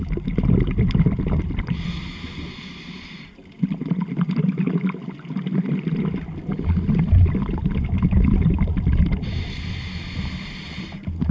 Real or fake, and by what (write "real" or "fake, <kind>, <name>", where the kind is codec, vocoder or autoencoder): real